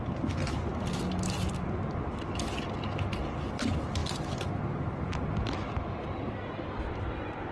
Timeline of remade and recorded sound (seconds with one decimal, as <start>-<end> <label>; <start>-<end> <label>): 0.0-7.5 recorded